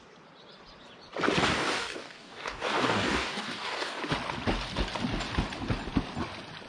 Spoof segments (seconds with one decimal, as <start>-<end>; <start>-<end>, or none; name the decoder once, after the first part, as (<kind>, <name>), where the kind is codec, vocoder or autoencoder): 1.4-4.0 (codec, DAC)